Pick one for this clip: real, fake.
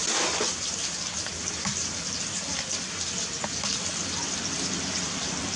real